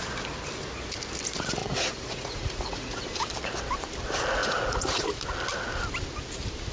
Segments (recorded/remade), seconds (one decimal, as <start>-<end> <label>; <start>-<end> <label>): 0.0-1.6 recorded; 1.6-3.0 remade; 3.0-4.4 recorded; 4.4-5.0 remade; 5.0-6.7 recorded